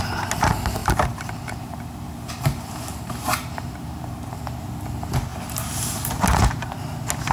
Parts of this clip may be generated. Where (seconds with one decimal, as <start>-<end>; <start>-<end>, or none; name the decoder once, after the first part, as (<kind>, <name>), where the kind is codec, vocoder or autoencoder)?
0.8-4.4 (vocoder, BigVGAN v2); 5.3-6.1